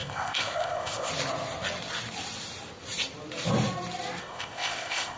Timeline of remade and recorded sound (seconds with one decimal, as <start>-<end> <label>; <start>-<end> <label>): 0.0-1.1 remade; 1.1-4.2 recorded; 4.2-5.2 remade